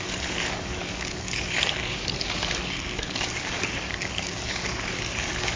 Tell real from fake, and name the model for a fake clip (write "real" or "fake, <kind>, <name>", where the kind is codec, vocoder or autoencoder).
fake, codec, DAC